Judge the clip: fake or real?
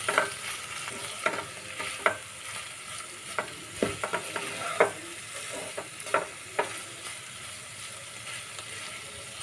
real